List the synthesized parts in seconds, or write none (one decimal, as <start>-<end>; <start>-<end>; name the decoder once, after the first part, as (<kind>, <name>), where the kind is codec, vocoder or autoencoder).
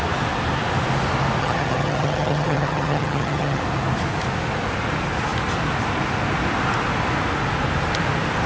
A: 1.4-3.6 (vocoder, HiFi-GAN)